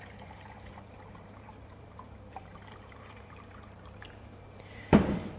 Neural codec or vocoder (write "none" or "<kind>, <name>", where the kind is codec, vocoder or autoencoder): vocoder, BigVGAN v2